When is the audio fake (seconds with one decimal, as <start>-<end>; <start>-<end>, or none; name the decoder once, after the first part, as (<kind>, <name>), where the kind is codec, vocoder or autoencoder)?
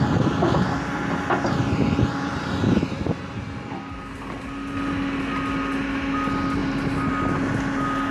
none